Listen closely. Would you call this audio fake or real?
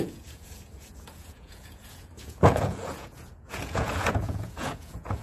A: fake